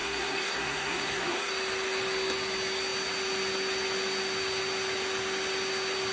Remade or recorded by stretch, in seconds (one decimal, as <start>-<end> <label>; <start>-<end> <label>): 0.0-1.5 remade; 1.5-6.1 recorded